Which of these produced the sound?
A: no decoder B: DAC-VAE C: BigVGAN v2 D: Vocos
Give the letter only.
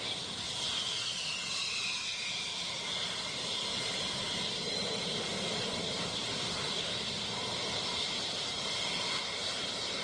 A